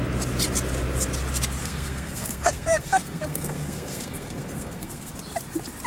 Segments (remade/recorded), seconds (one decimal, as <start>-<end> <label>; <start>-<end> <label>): 0.0-1.6 recorded; 1.6-5.1 remade; 5.1-5.9 recorded